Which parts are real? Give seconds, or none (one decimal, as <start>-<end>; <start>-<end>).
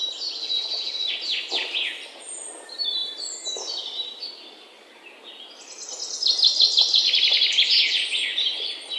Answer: 0.0-9.0